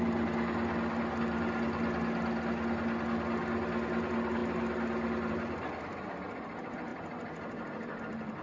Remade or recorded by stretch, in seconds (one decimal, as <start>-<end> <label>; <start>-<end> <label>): 0.0-8.4 recorded